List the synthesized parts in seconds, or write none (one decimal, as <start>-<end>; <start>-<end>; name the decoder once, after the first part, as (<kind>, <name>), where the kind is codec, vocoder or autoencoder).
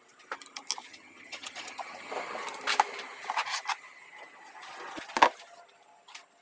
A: 0.9-2.1 (vocoder, HiFi-GAN)